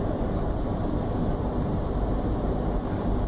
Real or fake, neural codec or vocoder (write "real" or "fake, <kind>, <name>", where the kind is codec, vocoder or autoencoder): real